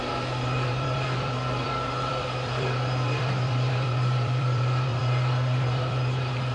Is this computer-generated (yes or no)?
yes